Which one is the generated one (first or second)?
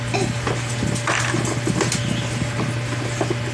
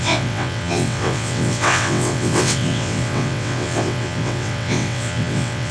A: second